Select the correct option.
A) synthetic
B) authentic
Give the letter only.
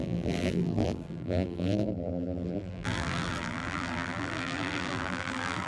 A